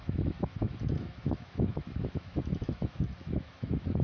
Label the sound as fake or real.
fake